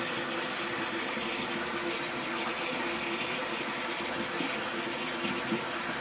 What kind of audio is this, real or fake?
real